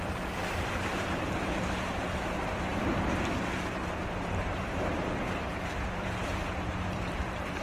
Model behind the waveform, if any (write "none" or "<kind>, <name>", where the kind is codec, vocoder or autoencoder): vocoder, BigVGAN v2